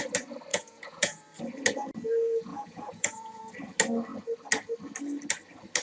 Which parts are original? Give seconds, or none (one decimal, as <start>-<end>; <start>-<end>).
0.0-0.5; 1.2-2.5; 3.4-5.8